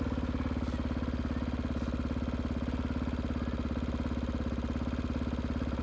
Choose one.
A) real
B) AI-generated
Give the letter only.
A